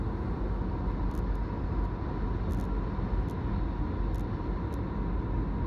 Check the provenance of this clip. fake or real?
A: real